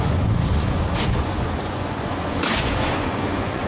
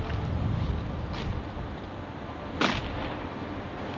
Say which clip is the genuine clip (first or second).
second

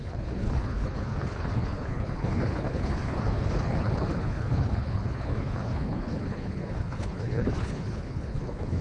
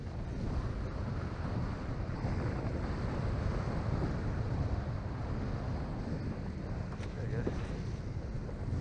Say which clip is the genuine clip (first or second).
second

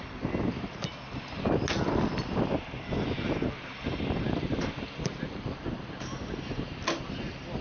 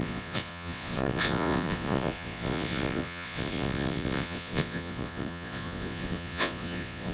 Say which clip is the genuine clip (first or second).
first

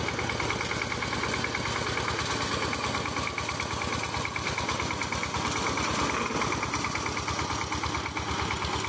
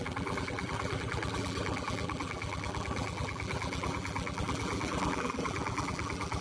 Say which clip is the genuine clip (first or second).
first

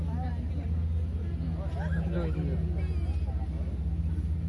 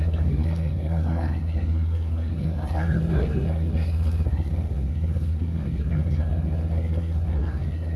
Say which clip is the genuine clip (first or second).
first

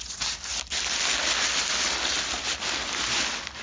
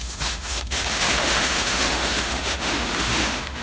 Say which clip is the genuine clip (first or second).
first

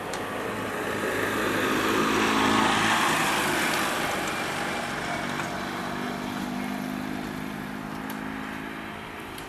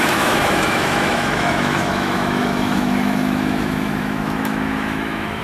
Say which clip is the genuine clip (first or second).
first